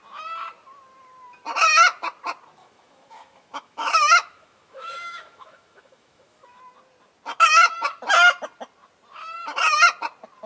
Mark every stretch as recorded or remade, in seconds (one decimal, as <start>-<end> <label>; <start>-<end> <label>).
0.0-2.6 recorded; 2.6-6.6 remade; 6.6-10.5 recorded

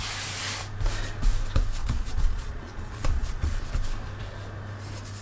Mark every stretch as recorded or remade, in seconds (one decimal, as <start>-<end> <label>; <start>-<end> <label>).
0.0-1.8 recorded; 1.8-3.7 remade; 3.7-5.2 recorded

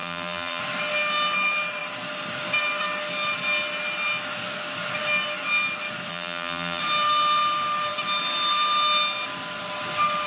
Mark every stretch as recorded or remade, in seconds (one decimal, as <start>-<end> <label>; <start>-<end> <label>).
0.0-0.6 remade; 0.6-6.1 recorded; 6.1-6.8 remade; 6.8-10.3 recorded

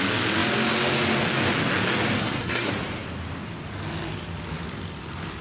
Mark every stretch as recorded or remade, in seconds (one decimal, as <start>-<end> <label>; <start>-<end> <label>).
0.0-2.2 recorded; 2.2-2.7 remade; 2.7-5.4 recorded

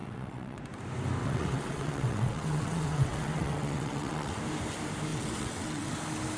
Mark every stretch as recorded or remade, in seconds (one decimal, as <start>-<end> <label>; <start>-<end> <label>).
0.0-0.6 remade; 0.6-1.2 recorded; 1.2-4.4 remade; 4.4-5.1 recorded; 5.1-5.9 remade; 5.9-6.4 recorded

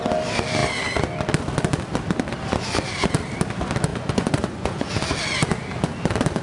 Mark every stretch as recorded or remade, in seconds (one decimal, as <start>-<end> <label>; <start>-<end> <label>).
0.0-3.9 recorded; 3.9-4.9 remade; 4.9-6.4 recorded

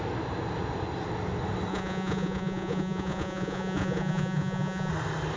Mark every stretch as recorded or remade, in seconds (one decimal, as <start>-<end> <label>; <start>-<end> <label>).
0.0-1.7 recorded; 1.7-4.9 remade; 4.9-5.4 recorded

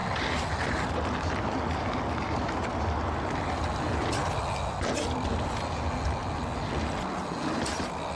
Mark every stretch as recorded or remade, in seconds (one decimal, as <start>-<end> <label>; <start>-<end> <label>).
0.0-8.2 recorded